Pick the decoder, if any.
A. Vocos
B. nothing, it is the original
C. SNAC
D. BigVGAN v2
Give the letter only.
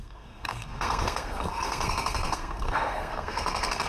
C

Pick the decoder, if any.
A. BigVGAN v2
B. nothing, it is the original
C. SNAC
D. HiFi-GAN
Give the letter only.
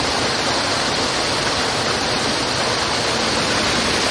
B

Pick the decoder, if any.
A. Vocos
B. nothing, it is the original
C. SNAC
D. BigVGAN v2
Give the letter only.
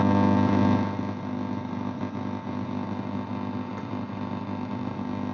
B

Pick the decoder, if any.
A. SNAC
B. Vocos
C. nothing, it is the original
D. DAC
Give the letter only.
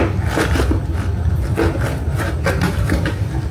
C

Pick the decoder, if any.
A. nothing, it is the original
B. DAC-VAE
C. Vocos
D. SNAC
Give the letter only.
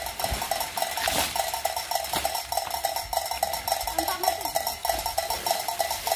A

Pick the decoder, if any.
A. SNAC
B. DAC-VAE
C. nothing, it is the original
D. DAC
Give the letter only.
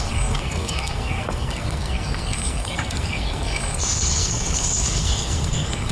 A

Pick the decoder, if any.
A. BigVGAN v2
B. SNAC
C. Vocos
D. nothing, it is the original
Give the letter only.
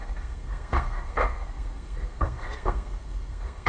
B